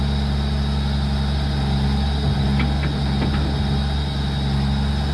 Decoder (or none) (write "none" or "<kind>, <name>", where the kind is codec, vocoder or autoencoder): none